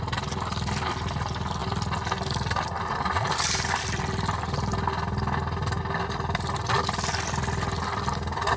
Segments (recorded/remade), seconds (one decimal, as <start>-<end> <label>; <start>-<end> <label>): 0.0-8.6 recorded